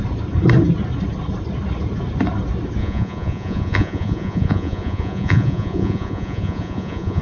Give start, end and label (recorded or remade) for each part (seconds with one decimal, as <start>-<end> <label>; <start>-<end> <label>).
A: 0.0-2.8 recorded; 2.8-7.2 remade